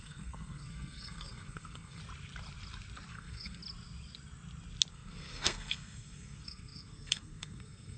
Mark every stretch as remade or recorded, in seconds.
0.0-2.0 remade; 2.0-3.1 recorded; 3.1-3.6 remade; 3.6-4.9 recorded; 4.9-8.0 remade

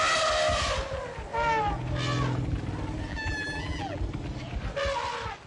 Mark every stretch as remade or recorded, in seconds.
0.0-3.1 recorded; 3.1-4.0 remade; 4.0-5.5 recorded

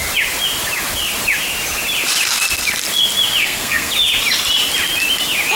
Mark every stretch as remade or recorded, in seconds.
0.0-3.4 recorded; 3.4-3.9 remade; 3.9-5.6 recorded

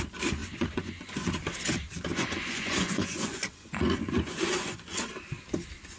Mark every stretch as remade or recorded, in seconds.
0.0-0.4 recorded; 0.4-1.3 remade; 1.3-2.1 recorded; 2.1-5.1 remade; 5.1-6.0 recorded

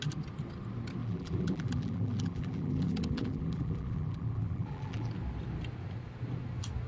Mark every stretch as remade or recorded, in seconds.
0.0-1.0 recorded; 1.0-5.1 remade; 5.1-6.9 recorded

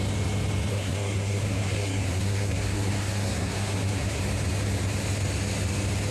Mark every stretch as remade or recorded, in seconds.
0.0-0.7 recorded; 0.7-4.2 remade; 4.2-6.1 recorded